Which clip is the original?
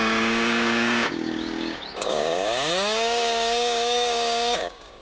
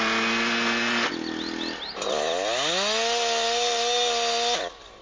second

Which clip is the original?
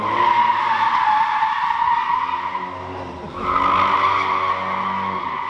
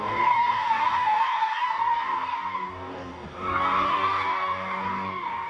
first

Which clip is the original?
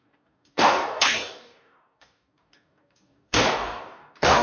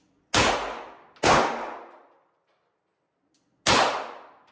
second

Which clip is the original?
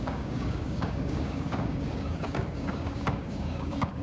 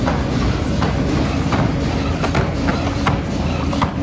second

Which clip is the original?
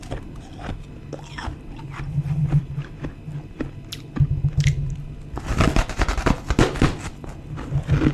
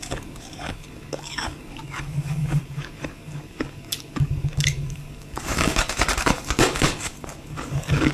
first